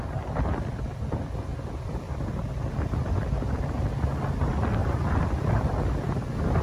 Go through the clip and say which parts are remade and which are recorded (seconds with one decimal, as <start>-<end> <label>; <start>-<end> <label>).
0.0-3.0 recorded; 3.0-3.8 remade; 3.8-4.8 recorded; 4.8-5.7 remade; 5.7-6.6 recorded